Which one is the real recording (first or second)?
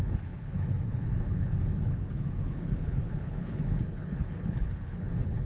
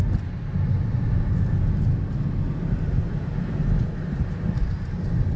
second